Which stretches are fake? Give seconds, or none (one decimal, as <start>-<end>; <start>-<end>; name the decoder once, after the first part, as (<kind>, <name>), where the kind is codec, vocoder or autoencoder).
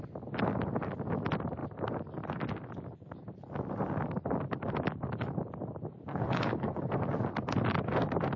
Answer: 6.1-6.9 (codec, HILCodec)